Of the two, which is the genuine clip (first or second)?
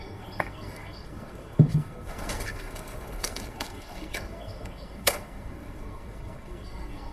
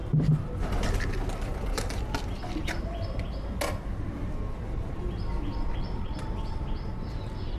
second